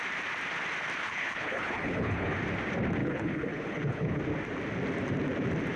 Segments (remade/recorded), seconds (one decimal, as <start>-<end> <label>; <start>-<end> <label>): 0.0-1.0 recorded; 1.0-2.4 remade; 2.4-3.0 recorded; 3.0-4.2 remade; 4.2-5.8 recorded